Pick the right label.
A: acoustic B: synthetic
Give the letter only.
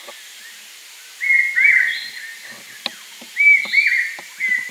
A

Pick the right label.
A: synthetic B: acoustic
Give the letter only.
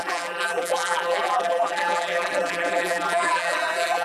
A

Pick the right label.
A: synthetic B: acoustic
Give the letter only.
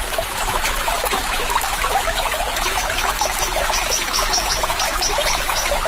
A